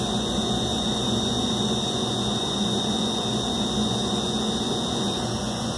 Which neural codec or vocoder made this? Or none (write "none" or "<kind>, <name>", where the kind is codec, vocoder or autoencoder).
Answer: vocoder, Vocos